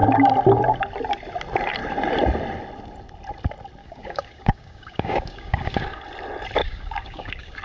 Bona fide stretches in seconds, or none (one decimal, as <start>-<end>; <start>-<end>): 0.0-3.8; 6.0-6.6